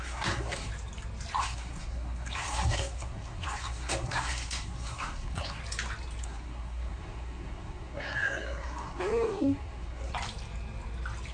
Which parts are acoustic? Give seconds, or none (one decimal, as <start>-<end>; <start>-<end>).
0.7-1.4; 5.6-6.2; 10.1-11.3